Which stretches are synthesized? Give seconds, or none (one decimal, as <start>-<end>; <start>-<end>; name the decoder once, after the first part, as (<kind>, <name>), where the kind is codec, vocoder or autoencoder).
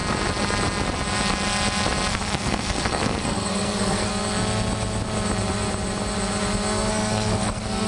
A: 2.1-4.1 (codec, SNAC); 6.9-7.9